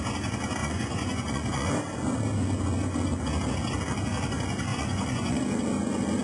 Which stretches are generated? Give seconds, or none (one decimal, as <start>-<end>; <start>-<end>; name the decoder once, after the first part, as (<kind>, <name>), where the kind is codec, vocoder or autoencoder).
0.6-1.7 (vocoder, Vocos); 4.7-5.4